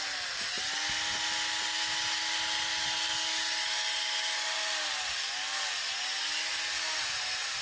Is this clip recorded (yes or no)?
yes